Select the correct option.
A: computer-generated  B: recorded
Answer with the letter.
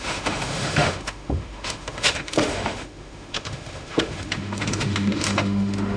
A